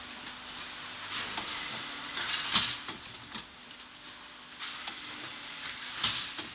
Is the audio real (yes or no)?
yes